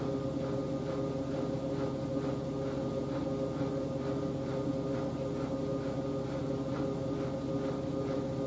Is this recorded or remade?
recorded